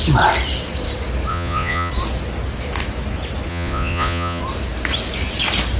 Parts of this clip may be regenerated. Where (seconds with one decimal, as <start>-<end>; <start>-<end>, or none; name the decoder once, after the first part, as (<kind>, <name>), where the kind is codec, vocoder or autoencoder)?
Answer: 1.3-1.9 (vocoder, Vocos); 3.5-4.4

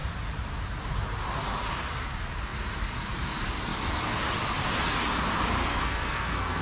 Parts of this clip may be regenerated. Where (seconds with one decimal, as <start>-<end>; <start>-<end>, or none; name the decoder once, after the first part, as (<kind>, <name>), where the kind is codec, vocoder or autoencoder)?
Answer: 5.7-6.6 (codec, SNAC)

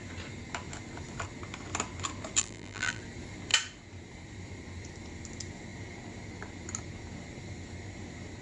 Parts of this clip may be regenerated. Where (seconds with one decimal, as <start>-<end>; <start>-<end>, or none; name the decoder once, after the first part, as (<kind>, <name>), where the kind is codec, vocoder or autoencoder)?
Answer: 2.4-3.0 (vocoder, BigVGAN v2)

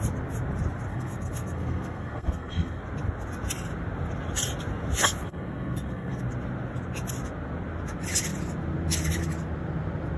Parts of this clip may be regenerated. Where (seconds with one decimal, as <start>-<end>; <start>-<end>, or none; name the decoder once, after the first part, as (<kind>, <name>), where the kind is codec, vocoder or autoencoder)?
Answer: 0.9-2.8 (codec, SNAC); 5.2-6.2

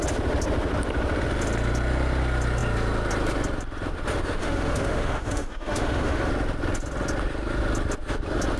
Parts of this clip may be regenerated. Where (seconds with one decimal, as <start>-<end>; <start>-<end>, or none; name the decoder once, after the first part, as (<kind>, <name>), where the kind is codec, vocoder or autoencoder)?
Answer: 4.4-6.3 (autoencoder, DAC-VAE)

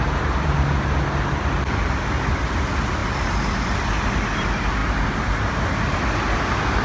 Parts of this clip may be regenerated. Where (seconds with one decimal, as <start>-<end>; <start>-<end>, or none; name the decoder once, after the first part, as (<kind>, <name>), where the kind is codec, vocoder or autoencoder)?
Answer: none

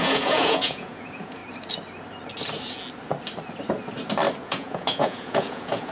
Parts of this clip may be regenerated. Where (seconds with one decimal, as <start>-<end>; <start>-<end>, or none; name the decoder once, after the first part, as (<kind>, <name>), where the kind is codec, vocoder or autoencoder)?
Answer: 0.0-1.4 (vocoder, Vocos); 4.4-5.9